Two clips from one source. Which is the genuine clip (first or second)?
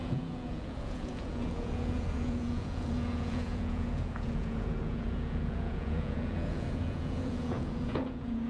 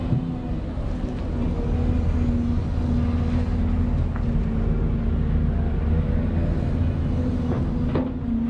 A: second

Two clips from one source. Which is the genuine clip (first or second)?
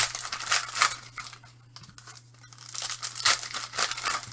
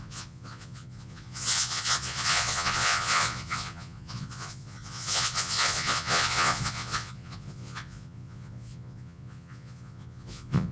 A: first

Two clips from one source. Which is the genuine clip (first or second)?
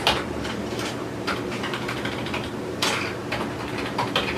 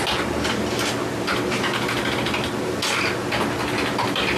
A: second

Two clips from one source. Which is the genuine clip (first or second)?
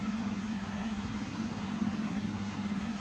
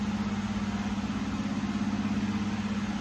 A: second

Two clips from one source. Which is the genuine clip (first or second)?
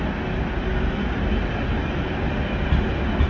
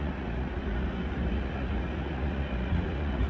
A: first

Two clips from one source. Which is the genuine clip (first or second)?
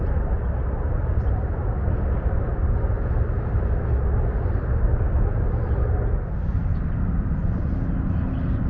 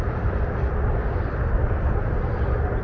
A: first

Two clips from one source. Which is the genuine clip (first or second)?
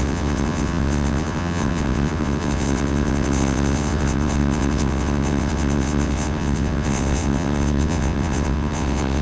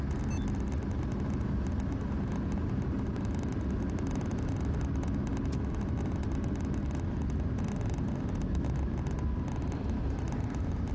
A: second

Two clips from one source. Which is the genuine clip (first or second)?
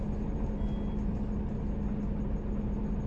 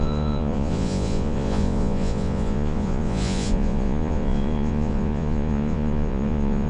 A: first